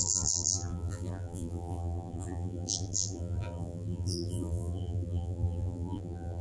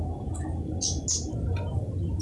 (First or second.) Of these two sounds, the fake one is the first